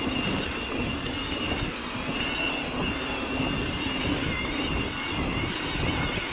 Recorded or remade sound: recorded